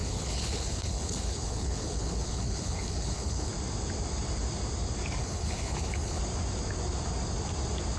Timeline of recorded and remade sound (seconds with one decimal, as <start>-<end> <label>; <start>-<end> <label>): 0.0-3.5 remade; 3.5-5.2 recorded; 5.2-6.2 remade; 6.2-8.0 recorded